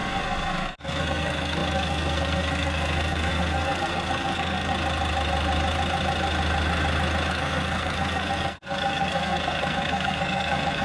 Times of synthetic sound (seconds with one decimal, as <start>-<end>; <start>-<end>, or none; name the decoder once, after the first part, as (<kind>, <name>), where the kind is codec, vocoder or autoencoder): 0.0-4.7 (codec, SNAC); 7.3-10.8